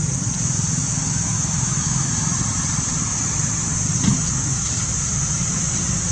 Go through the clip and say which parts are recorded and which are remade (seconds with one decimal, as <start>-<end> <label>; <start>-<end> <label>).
0.0-0.8 recorded; 0.8-2.1 remade; 2.1-4.1 recorded; 4.1-4.7 remade; 4.7-6.1 recorded